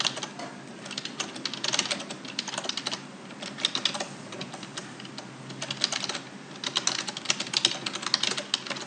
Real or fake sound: real